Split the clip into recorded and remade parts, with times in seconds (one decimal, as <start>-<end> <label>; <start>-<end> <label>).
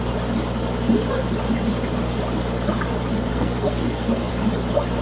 0.0-3.3 recorded; 3.3-4.3 remade; 4.3-5.0 recorded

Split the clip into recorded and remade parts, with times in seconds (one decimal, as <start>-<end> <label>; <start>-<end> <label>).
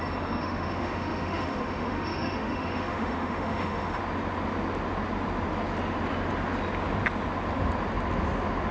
0.0-0.4 recorded; 0.4-4.0 remade; 4.0-8.7 recorded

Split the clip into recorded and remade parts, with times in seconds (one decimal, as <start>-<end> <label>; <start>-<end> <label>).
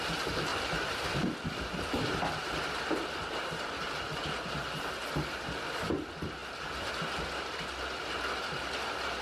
0.0-0.5 recorded; 0.5-1.2 remade; 1.2-2.4 recorded; 2.4-3.3 remade; 3.3-5.0 recorded; 5.0-5.6 remade; 5.6-9.2 recorded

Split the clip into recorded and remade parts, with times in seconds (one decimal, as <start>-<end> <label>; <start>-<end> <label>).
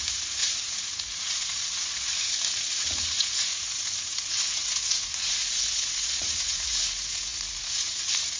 0.0-8.4 remade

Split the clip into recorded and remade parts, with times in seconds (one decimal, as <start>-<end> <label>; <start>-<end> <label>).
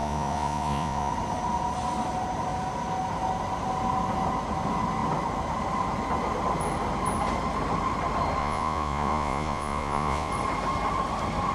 0.0-1.1 remade; 1.1-8.4 recorded; 8.4-10.3 remade; 10.3-11.5 recorded